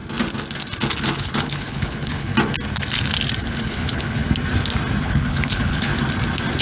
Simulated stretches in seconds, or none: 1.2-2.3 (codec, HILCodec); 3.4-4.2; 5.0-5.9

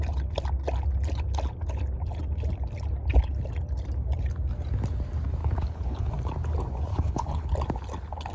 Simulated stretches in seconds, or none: 5.4-6.1 (codec, HILCodec); 6.9-7.5

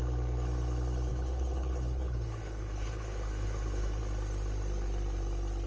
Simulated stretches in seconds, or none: 1.1-4.0 (codec, HILCodec)